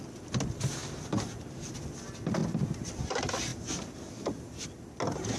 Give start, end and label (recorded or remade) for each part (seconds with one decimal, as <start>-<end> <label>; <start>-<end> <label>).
0.0-0.8 recorded; 0.8-1.9 remade; 1.9-5.4 recorded